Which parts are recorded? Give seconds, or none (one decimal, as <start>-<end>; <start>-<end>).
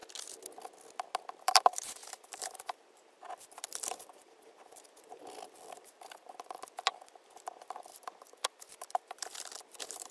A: 0.0-1.4